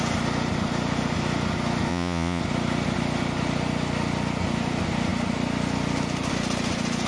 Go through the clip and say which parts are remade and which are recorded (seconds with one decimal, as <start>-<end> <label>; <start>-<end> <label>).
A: 0.0-1.9 recorded; 1.9-2.4 remade; 2.4-7.1 recorded